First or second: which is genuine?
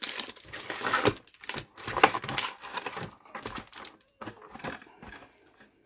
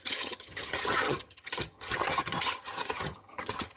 first